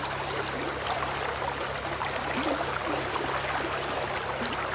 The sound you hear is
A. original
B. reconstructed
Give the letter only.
A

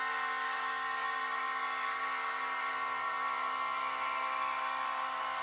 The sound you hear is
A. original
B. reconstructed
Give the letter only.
B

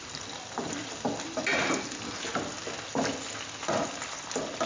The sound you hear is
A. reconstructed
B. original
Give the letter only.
B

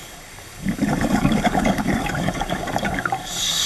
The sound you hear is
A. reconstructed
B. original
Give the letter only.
A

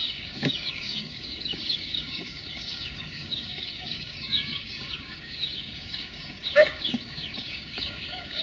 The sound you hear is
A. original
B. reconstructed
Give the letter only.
B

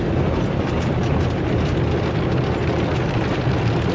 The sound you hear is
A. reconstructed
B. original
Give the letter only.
B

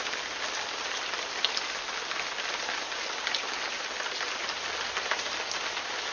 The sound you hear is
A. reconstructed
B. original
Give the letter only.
B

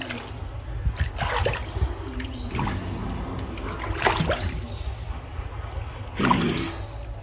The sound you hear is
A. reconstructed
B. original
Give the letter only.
B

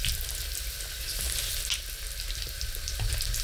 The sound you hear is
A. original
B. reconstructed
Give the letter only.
A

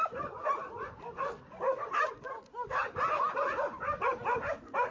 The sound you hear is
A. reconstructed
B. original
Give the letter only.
B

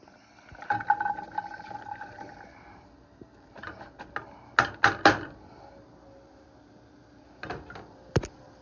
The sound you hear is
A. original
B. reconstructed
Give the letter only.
A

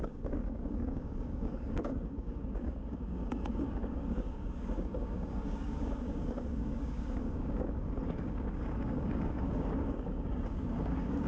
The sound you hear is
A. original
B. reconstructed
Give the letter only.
B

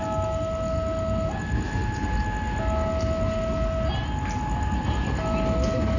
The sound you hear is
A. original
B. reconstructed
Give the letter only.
A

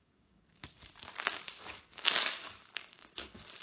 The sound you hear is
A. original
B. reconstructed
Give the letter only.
B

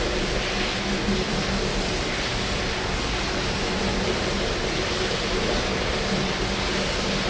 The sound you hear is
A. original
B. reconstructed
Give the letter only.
A